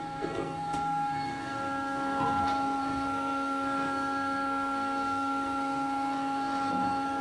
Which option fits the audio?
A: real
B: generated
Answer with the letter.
B